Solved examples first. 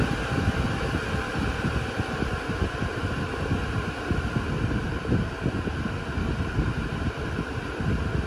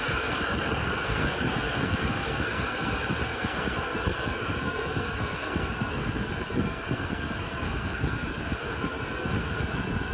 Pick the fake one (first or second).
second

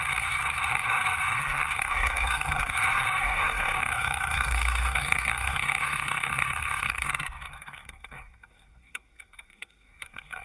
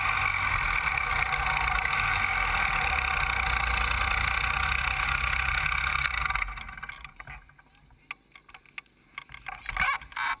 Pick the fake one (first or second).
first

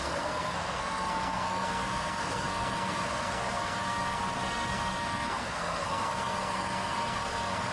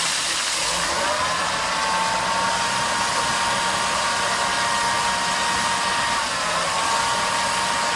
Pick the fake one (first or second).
first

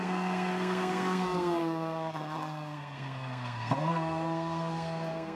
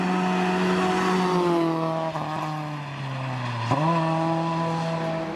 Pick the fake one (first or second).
first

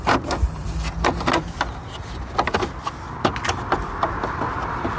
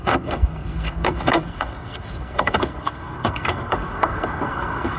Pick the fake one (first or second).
second